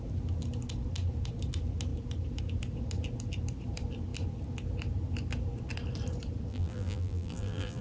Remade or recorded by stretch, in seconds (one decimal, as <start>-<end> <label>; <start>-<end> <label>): 0.0-6.5 recorded; 6.5-7.8 remade